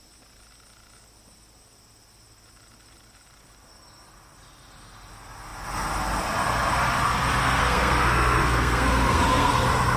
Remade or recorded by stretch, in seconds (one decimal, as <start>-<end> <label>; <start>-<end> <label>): 0.0-7.4 recorded; 7.4-9.5 remade; 9.5-10.0 recorded